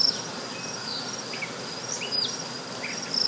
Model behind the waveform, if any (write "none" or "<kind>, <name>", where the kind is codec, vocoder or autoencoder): none